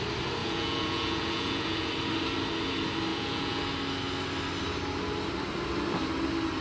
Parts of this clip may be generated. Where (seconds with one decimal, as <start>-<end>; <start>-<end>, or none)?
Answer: 0.4-1.9; 3.1-3.6